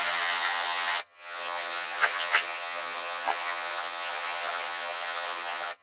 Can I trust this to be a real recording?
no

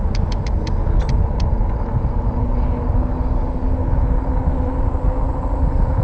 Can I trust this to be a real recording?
yes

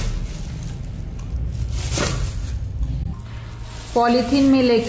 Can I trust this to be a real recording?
yes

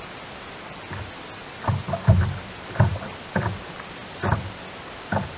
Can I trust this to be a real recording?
yes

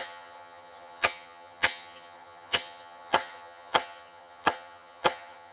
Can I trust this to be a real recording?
no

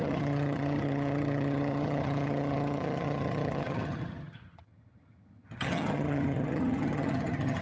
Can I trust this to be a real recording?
no